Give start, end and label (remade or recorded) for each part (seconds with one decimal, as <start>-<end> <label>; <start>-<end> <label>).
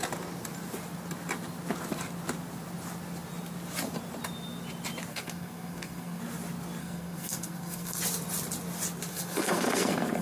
0.0-5.1 recorded; 5.1-6.2 remade; 6.2-6.8 recorded; 6.8-8.0 remade; 8.0-9.1 recorded; 9.1-10.2 remade